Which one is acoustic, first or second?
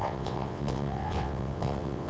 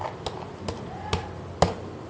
second